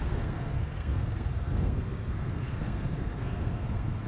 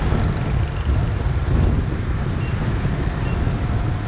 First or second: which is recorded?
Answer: second